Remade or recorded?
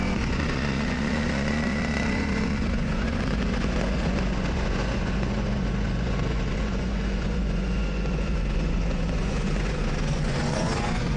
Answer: remade